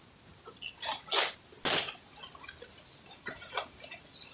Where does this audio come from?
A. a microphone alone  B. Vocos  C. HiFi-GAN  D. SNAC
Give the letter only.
A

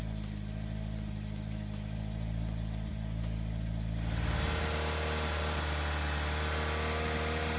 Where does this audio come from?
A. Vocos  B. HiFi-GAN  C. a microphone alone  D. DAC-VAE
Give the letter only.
C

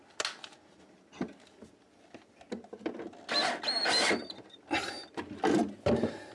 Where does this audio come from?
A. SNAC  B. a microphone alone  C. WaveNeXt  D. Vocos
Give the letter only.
B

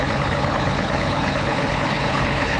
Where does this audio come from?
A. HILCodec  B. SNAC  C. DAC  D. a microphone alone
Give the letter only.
A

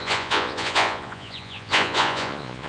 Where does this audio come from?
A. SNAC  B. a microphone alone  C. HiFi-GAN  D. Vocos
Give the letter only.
D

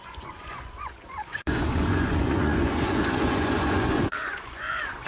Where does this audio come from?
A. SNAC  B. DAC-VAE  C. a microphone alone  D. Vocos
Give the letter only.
D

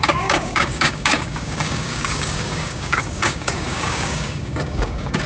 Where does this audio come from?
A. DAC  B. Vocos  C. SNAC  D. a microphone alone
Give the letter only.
A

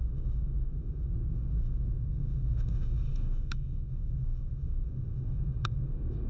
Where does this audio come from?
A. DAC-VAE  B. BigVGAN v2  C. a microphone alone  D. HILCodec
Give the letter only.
A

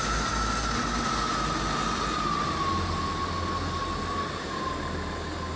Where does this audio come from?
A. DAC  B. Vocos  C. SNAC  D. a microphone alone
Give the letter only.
D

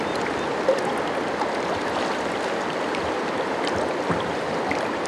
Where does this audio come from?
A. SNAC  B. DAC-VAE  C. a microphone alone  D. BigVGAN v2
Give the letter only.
C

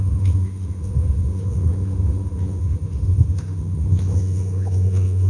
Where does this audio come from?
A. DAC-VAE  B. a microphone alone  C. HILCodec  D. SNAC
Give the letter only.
A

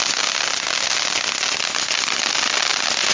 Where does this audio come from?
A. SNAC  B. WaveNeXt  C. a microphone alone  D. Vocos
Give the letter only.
C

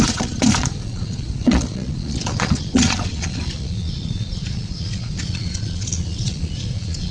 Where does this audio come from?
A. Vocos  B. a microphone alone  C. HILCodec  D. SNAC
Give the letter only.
A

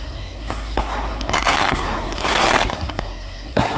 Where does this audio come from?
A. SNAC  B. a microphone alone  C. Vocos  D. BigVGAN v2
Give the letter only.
A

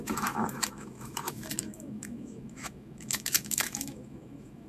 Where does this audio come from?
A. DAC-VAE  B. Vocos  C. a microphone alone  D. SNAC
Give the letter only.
A